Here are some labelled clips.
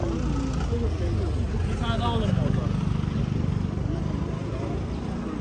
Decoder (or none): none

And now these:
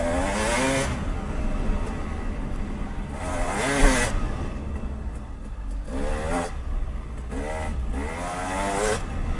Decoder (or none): none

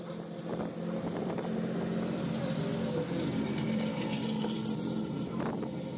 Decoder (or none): none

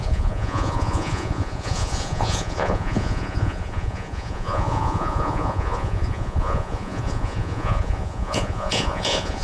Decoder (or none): vocoder, Vocos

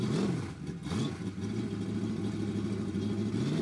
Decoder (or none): none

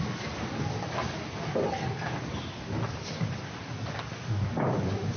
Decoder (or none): none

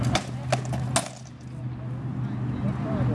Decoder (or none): none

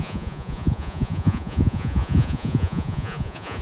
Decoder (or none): vocoder, Vocos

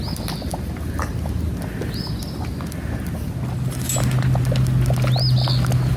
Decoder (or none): none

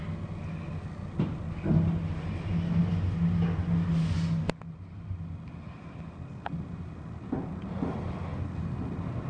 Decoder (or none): none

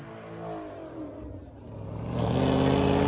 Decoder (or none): none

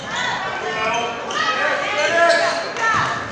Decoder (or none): none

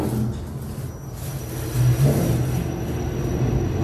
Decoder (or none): none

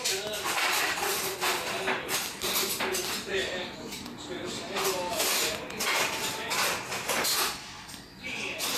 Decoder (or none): none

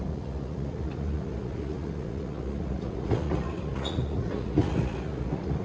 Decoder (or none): vocoder, Vocos